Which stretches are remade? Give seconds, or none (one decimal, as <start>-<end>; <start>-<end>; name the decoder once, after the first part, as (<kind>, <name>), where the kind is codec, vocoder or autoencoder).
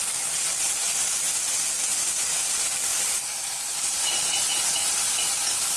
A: 2.9-5.3 (vocoder, BigVGAN v2)